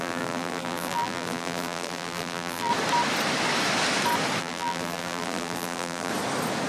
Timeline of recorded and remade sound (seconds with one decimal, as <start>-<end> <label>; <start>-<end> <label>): 0.0-2.7 remade; 2.7-4.4 recorded; 4.4-6.1 remade; 6.1-6.7 recorded

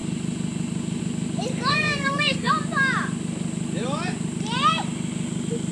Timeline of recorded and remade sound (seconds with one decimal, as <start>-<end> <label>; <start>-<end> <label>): 0.0-1.7 recorded; 1.7-2.5 remade; 2.5-5.7 recorded

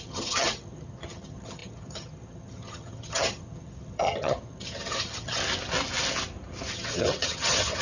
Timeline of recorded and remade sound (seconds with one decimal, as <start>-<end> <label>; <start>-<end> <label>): 0.0-5.4 remade; 5.4-6.7 recorded; 6.7-7.8 remade

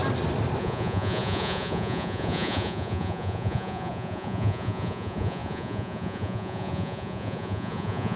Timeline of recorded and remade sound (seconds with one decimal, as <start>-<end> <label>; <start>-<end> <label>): 0.0-0.6 recorded; 0.6-8.2 remade

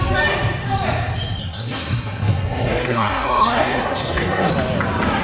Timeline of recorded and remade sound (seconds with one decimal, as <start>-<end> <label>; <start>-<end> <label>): 0.0-1.4 recorded; 1.4-4.5 remade; 4.5-5.2 recorded